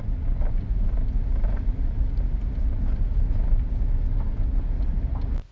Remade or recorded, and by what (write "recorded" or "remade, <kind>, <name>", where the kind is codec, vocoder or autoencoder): recorded